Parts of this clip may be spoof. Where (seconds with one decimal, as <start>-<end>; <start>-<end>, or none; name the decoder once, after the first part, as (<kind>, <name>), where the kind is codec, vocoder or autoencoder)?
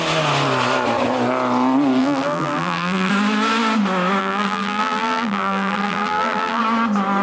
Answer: 2.0-3.1 (vocoder, BigVGAN v2); 4.2-6.6